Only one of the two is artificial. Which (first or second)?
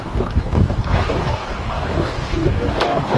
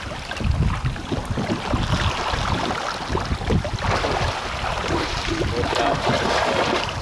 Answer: first